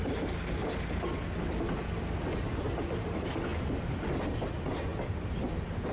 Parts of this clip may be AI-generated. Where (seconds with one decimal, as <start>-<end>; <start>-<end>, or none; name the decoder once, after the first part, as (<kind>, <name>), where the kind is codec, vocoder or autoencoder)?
none

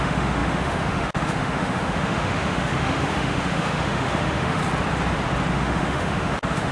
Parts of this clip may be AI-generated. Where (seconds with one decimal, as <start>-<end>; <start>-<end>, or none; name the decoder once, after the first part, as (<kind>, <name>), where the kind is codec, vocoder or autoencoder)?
0.0-4.6 (autoencoder, DAC-VAE); 5.5-6.7

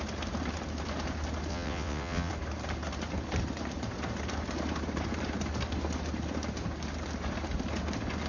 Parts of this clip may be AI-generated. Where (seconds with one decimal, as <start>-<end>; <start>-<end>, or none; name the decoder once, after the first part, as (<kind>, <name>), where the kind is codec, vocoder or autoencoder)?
1.5-2.3 (vocoder, WaveNeXt)

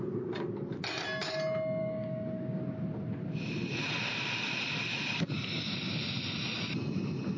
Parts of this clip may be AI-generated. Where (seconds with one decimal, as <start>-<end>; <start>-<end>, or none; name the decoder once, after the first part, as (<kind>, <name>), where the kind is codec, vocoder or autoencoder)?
1.8-2.6 (codec, DAC)

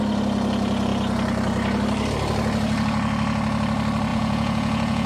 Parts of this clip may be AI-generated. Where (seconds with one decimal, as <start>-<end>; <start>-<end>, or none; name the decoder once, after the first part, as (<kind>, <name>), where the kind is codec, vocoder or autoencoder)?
4.1-5.1 (vocoder, Vocos)

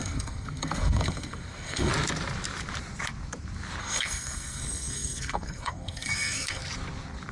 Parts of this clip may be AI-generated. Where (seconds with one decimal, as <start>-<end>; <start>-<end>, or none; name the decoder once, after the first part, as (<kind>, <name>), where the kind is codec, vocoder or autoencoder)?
0.0-1.9 (codec, SNAC); 3.8-6.6